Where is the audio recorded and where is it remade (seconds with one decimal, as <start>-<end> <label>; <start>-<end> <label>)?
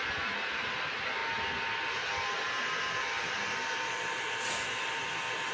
0.0-5.5 recorded